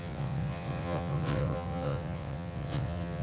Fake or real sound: fake